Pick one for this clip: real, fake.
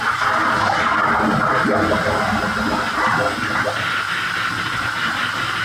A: real